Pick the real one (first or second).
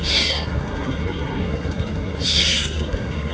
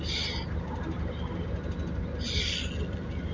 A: second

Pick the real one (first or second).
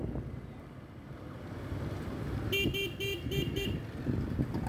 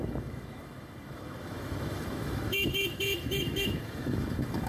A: first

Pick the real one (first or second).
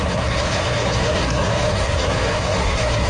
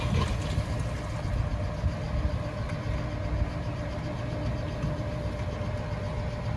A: second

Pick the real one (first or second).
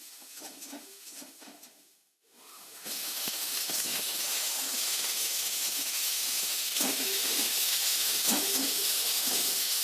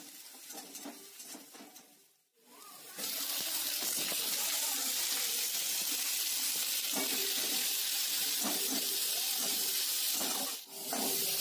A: second